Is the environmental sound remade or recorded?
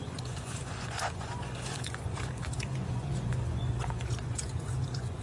remade